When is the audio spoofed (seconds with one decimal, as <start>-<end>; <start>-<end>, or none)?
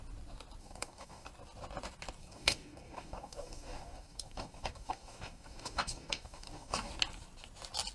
0.6-1.3; 2.2-6.9